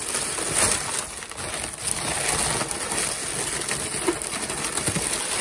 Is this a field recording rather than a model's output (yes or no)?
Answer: yes